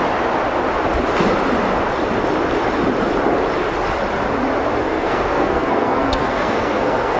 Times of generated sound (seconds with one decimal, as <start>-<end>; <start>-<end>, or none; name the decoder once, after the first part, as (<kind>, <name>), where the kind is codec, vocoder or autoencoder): 4.9-7.2 (codec, SNAC)

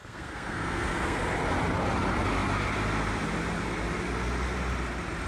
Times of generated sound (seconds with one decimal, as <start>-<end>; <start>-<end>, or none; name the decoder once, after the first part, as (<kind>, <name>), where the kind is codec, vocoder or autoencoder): 0.0-1.2 (codec, SNAC)

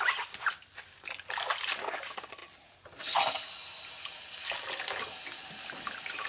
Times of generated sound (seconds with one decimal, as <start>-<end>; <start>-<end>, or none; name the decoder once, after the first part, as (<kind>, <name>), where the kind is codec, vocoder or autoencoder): none